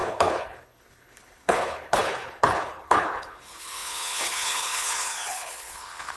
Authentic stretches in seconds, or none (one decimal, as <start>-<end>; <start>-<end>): none